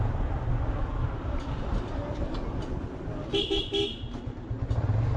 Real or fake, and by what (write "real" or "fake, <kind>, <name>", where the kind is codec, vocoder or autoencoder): real